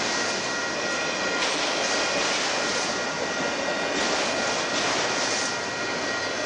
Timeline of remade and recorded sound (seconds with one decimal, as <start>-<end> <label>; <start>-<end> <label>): 0.0-6.5 recorded